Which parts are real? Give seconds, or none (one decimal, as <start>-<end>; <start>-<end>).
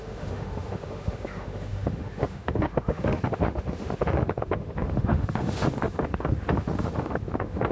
none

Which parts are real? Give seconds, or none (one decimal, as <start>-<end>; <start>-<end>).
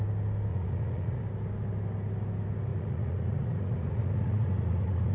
0.0-0.5; 1.2-2.7